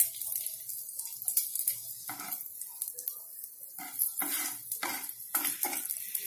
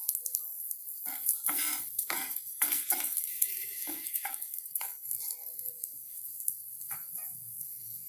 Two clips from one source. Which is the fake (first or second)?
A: second